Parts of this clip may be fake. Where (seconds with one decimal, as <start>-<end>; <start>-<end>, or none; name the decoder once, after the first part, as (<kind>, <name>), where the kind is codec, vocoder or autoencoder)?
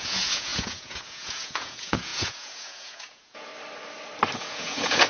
0.0-3.5 (vocoder, Vocos); 4.4-5.1